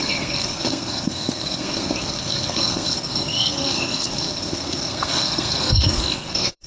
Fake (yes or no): yes